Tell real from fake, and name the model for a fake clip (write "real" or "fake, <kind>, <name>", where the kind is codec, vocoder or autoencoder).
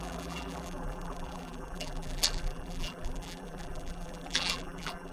fake, vocoder, BigVGAN v2